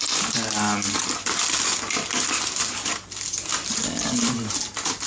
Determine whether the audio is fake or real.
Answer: real